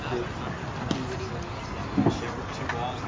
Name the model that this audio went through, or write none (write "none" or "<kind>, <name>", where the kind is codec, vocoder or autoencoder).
none